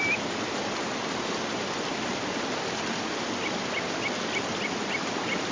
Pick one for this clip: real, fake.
real